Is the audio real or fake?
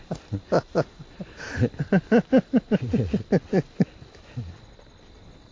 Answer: real